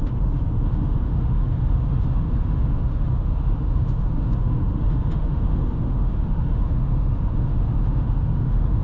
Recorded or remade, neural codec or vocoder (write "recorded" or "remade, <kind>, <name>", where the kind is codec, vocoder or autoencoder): remade, autoencoder, DAC-VAE